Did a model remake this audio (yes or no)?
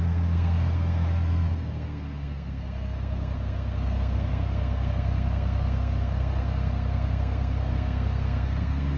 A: yes